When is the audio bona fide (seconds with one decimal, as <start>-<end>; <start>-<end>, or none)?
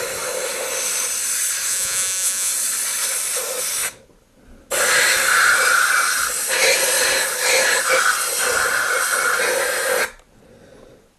0.0-1.7; 2.5-11.2